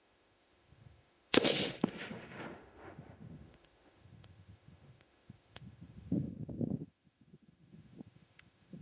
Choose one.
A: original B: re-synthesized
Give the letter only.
B